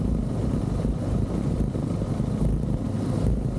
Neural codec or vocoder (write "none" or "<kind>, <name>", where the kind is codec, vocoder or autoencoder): none